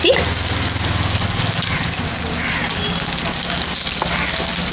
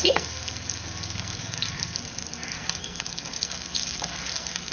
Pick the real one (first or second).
first